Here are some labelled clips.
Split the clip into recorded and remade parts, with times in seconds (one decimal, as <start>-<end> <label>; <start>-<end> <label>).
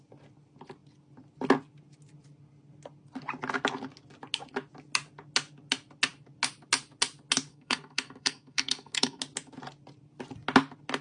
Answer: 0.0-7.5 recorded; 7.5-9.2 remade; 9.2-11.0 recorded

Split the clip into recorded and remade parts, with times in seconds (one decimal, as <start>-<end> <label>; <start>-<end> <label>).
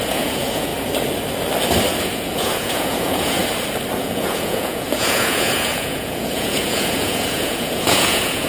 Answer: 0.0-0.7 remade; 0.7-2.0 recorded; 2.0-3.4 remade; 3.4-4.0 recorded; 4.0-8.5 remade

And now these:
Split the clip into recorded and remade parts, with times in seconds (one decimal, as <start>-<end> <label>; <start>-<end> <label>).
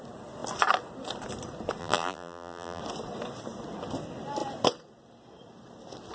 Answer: 0.0-1.8 recorded; 1.8-2.8 remade; 2.8-6.1 recorded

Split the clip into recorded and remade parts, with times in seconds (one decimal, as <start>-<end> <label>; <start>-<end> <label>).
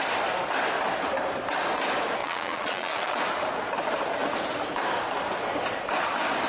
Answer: 0.0-2.2 recorded; 2.2-3.2 remade; 3.2-6.5 recorded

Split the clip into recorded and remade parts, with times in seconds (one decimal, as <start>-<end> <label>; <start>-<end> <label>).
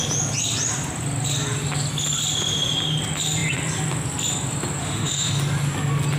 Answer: 0.0-4.8 recorded; 4.8-5.4 remade; 5.4-6.2 recorded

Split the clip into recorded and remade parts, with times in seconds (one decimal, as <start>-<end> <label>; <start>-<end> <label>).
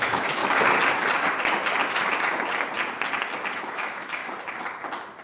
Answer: 0.0-0.4 remade; 0.4-3.5 recorded; 3.5-4.2 remade; 4.2-5.2 recorded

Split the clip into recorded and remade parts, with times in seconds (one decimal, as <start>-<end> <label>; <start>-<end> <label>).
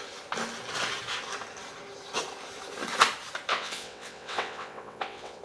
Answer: 0.0-3.5 recorded; 3.5-5.4 remade